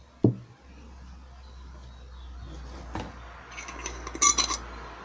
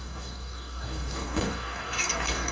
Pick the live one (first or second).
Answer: first